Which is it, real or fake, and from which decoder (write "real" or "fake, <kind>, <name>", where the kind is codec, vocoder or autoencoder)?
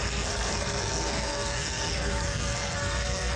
fake, codec, SNAC